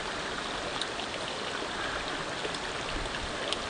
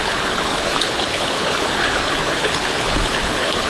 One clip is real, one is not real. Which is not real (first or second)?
second